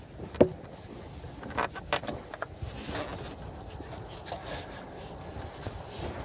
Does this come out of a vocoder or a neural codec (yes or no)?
no